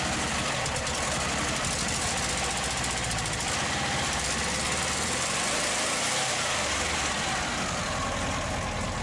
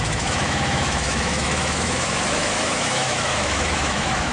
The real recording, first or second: first